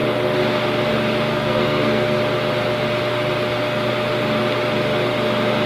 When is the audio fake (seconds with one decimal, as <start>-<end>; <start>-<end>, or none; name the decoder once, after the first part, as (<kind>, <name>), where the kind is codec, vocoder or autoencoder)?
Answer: 1.3-2.2 (codec, SNAC)